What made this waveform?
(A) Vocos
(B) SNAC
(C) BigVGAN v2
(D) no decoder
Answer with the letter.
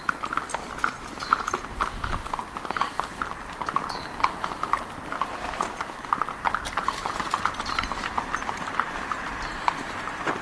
D